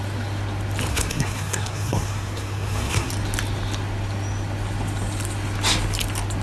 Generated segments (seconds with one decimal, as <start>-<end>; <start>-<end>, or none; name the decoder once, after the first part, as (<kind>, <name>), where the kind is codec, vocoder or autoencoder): 0.9-3.1 (codec, SNAC)